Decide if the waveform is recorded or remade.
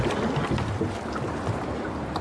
recorded